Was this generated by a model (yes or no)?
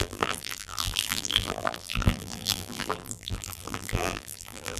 yes